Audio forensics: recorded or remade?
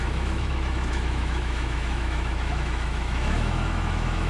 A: remade